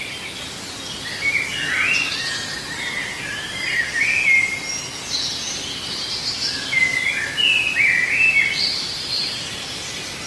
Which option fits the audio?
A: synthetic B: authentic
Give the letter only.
B